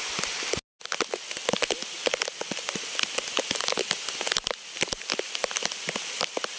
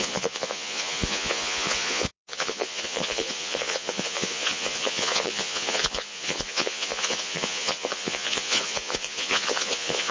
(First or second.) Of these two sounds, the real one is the first